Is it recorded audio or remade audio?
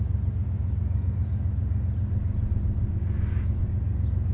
recorded